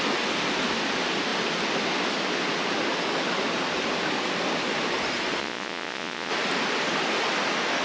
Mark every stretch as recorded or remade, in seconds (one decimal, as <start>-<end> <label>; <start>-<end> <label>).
0.0-5.4 recorded; 5.4-6.3 remade; 6.3-7.8 recorded